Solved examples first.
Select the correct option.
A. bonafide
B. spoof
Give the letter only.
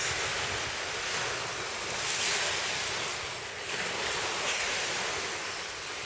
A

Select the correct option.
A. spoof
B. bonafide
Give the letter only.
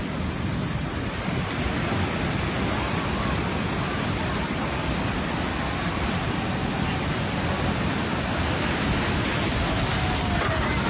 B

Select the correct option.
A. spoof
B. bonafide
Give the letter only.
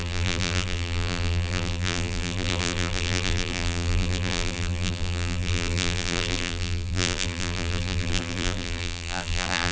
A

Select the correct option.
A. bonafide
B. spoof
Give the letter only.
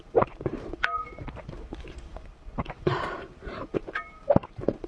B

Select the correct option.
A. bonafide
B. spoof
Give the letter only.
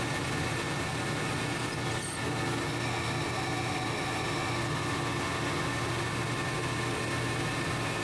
A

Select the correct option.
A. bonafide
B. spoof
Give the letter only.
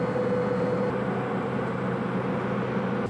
A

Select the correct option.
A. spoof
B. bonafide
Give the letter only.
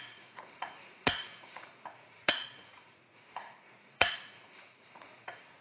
A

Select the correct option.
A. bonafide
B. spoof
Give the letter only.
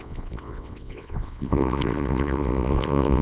B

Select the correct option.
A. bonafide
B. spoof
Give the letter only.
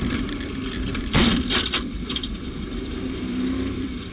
B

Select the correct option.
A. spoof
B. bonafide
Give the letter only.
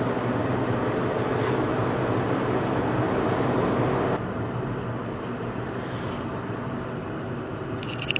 B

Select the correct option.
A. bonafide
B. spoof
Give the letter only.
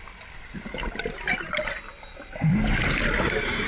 A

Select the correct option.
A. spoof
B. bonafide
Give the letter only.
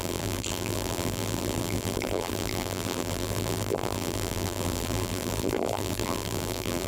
A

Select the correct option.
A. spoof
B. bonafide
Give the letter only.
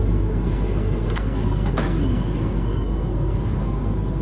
A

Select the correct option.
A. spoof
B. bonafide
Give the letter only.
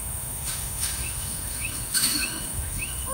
A